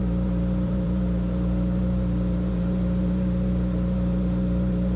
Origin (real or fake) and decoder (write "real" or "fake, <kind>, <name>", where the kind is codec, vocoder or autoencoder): fake, vocoder, BigVGAN v2